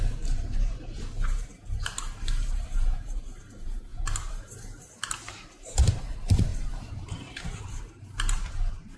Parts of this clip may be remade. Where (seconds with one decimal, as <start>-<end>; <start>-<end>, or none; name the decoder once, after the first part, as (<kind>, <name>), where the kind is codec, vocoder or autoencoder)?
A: 0.0-9.0 (vocoder, BigVGAN v2)